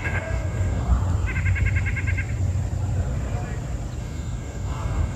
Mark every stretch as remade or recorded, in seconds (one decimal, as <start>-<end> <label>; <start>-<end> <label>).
0.0-0.9 remade; 0.9-4.0 recorded; 4.0-5.2 remade